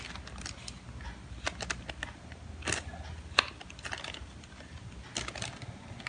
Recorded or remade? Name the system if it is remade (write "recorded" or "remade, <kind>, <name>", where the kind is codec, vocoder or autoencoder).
recorded